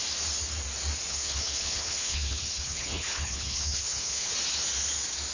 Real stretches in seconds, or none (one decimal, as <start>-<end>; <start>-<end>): 0.0-1.1; 4.3-5.3